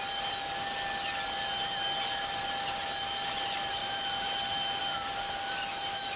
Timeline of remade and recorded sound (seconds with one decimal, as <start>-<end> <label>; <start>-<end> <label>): 0.0-6.2 recorded